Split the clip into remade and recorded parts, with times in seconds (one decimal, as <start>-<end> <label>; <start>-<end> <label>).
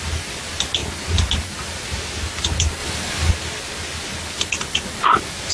0.0-5.5 recorded